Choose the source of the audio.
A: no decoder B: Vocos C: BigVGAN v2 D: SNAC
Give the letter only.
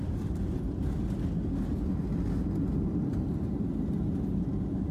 A